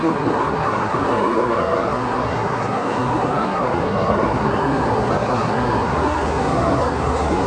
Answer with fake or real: fake